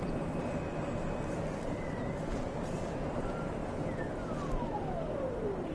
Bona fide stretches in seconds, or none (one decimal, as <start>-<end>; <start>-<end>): 0.0-5.7